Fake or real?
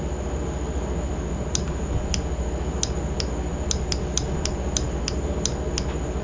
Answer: real